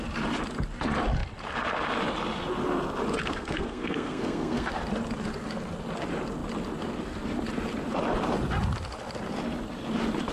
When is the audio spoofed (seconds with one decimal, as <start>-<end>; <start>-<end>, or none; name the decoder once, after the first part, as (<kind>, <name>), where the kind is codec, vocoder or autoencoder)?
3.2-4.7 (codec, SNAC)